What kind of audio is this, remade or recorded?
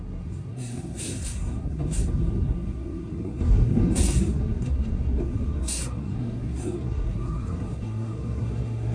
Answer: remade